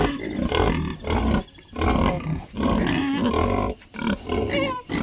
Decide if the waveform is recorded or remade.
recorded